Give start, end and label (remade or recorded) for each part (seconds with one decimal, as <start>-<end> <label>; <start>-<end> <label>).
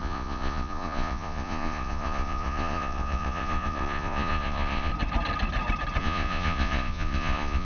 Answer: 0.0-4.9 remade; 4.9-6.0 recorded; 6.0-7.6 remade